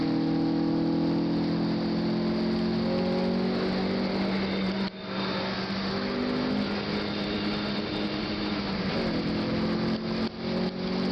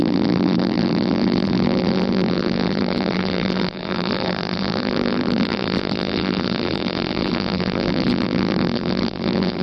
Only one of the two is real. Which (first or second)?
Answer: first